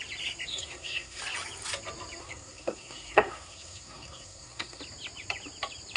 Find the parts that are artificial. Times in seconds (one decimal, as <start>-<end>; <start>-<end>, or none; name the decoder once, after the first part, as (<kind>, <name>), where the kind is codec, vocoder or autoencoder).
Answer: 0.5-1.2 (codec, SNAC); 2.2-4.8